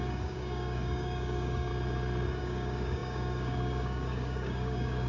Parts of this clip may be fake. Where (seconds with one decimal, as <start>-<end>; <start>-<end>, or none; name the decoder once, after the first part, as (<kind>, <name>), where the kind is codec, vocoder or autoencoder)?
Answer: 0.0-1.7 (codec, DAC); 2.4-5.1